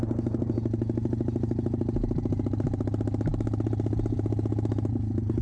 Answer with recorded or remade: recorded